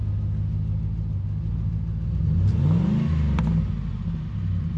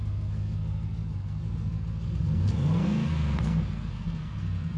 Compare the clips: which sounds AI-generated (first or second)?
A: second